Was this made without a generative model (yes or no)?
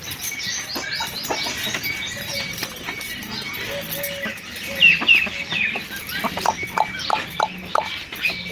yes